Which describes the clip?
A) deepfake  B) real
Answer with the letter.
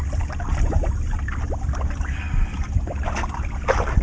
A